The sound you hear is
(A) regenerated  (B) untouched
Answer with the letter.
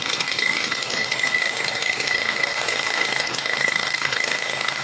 A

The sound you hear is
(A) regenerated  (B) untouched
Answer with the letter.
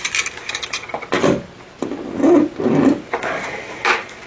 B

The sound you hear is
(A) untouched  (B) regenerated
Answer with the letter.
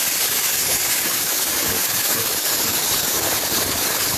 B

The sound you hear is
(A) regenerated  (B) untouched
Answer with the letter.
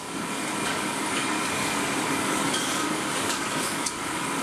A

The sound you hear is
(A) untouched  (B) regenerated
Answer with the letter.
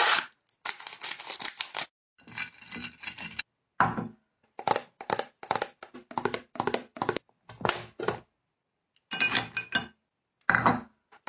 A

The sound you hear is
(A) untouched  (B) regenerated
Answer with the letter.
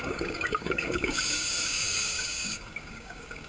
B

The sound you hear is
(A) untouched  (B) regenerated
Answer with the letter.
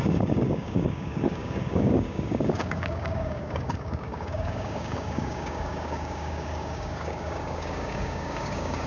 B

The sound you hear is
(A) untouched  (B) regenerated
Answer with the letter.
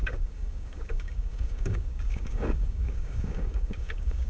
B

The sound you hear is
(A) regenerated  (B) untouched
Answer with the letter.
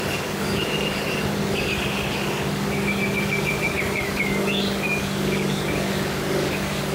A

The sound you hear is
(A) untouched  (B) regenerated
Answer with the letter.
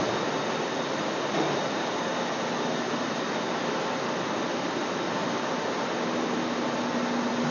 A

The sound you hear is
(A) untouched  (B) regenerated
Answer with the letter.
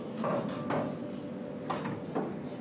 A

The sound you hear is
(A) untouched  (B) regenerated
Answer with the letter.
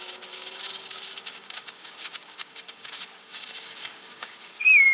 B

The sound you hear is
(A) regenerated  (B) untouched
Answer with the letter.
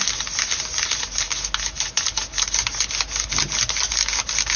B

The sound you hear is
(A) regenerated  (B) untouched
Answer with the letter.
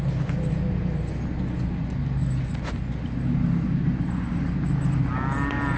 B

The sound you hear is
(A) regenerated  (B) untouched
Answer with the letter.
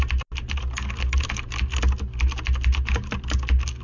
B